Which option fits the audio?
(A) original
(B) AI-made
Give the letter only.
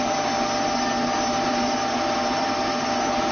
A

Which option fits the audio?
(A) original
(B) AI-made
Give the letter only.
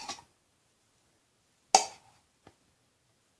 A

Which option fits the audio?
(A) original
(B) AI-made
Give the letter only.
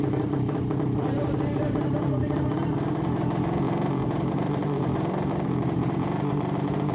B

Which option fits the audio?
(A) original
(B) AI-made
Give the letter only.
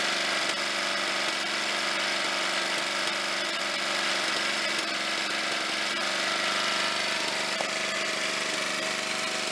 A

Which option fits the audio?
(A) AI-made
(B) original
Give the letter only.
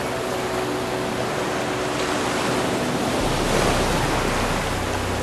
B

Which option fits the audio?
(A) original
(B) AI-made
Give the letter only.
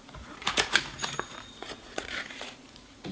B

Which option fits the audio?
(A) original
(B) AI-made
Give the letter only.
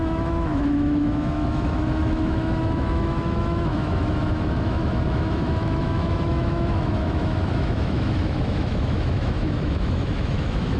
B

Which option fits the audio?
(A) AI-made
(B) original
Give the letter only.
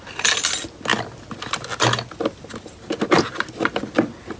B